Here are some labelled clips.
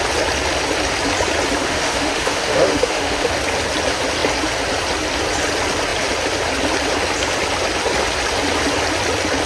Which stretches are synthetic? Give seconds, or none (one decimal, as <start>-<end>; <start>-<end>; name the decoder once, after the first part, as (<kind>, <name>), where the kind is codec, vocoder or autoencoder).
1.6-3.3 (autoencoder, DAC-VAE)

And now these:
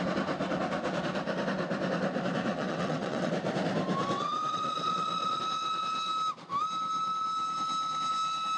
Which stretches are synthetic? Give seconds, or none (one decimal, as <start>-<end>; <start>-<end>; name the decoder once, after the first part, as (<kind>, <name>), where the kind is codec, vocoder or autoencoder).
2.5-3.3 (vocoder, WaveNeXt); 4.0-5.4

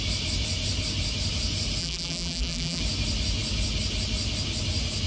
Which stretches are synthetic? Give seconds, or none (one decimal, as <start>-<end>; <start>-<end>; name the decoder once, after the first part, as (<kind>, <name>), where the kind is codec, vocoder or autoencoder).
1.8-2.8 (vocoder, BigVGAN v2)

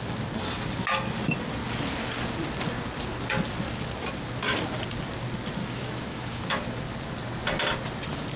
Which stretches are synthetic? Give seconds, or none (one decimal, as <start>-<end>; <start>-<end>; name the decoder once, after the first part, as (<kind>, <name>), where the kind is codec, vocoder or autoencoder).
5.6-6.4 (autoencoder, DAC-VAE)